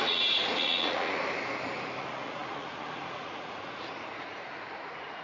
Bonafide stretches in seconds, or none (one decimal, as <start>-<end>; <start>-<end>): 1.2-2.0